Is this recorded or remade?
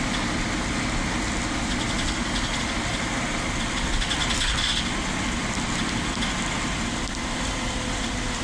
recorded